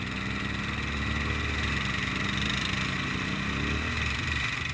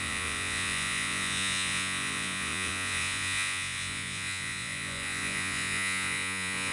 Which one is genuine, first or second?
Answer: first